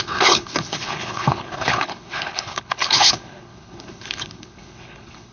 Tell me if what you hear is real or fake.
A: fake